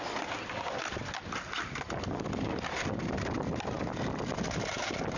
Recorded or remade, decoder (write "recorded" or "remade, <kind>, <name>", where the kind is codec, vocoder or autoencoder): recorded